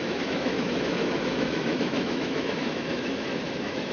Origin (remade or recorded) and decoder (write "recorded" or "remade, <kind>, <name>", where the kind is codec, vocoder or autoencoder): remade, autoencoder, DAC-VAE